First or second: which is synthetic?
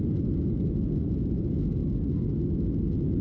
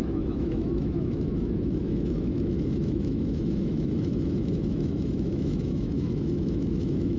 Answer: second